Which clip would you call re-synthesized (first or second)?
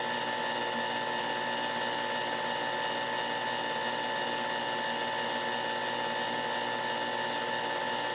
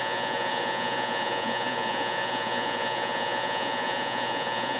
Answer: second